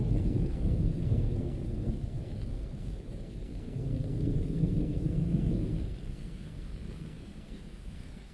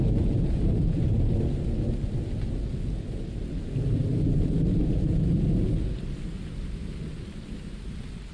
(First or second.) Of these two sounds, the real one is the second